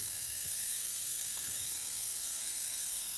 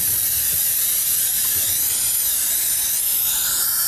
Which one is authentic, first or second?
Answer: second